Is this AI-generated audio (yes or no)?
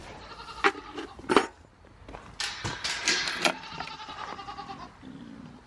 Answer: no